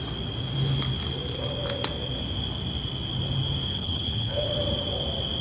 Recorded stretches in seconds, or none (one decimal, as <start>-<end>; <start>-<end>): 0.0-3.7; 4.5-5.4